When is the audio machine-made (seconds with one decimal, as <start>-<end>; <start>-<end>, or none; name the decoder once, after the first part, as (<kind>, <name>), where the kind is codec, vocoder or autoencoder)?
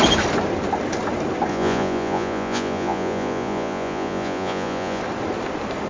1.5-5.0 (vocoder, Vocos)